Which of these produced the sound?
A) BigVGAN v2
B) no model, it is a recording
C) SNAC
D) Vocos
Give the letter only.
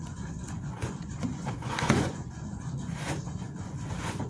D